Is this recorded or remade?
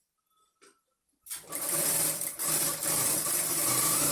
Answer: remade